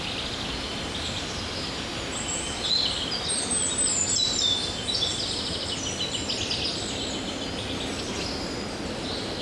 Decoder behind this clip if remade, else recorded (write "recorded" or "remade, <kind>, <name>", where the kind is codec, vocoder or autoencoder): recorded